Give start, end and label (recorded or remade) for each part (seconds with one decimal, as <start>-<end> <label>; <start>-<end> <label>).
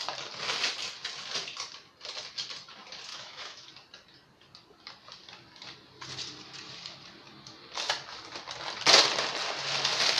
0.0-3.1 recorded; 3.1-3.7 remade; 3.7-10.2 recorded